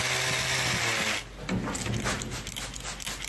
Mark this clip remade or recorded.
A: remade